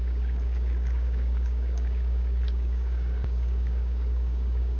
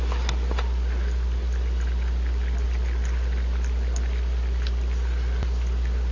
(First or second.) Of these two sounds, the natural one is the second